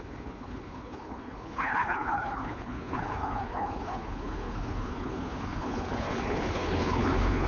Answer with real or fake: fake